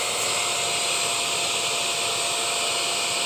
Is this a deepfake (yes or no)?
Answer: no